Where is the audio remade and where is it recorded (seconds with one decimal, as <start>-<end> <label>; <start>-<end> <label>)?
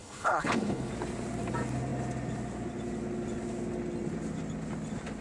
0.0-0.9 remade; 0.9-5.2 recorded